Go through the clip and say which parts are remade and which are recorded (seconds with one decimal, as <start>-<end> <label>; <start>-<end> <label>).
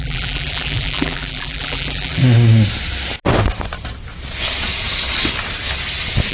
0.0-2.2 remade; 2.2-6.3 recorded